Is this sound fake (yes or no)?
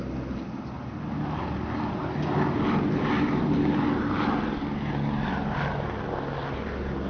no